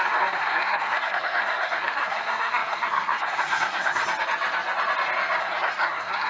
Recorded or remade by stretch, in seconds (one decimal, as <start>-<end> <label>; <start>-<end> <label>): 0.0-4.0 remade; 4.0-5.4 recorded; 5.4-6.3 remade